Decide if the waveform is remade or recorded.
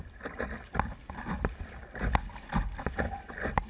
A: recorded